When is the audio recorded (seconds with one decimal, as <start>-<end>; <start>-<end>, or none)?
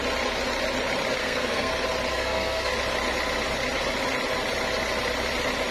0.0-1.2; 1.7-2.1; 2.7-5.7